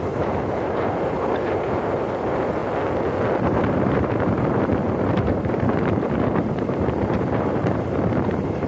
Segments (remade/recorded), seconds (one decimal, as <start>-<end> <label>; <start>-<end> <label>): 0.0-2.6 remade; 2.6-3.4 recorded; 3.4-4.7 remade; 4.7-5.3 recorded; 5.3-8.7 remade